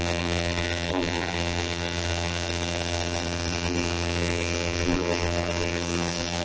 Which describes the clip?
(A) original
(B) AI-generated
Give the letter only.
B